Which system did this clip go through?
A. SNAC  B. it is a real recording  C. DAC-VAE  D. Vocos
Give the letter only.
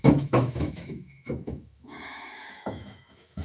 C